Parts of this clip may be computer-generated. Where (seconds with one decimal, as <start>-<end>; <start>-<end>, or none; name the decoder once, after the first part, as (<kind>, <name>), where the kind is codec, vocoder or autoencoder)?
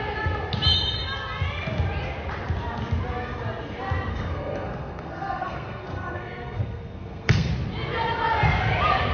4.1-7.5 (codec, SNAC)